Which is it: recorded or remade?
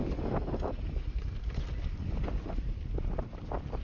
recorded